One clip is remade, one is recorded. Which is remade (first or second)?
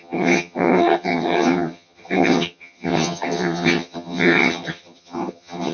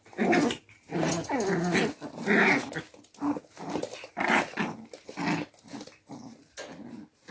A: first